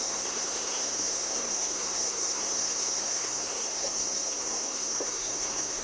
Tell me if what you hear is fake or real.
fake